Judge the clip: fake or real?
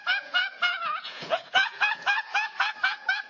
fake